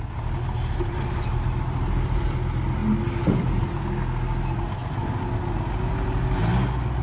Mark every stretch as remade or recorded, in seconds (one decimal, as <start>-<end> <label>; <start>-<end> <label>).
0.0-7.0 recorded